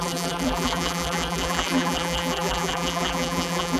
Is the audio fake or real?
fake